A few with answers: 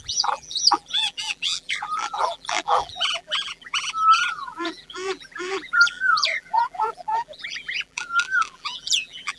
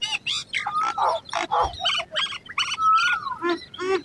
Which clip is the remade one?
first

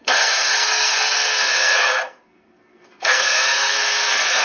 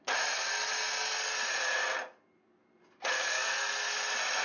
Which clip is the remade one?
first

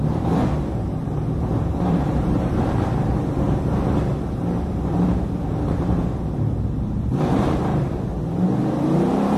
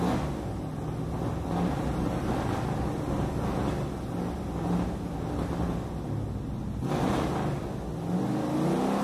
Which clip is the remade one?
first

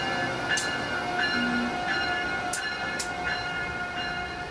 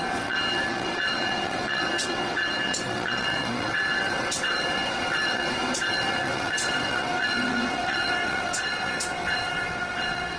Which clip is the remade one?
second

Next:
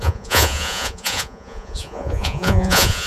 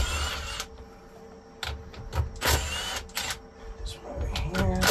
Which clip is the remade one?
first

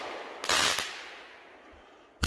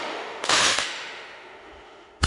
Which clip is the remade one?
second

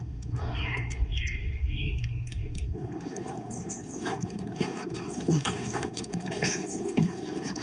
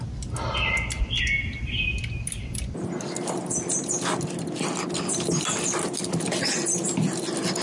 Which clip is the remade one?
first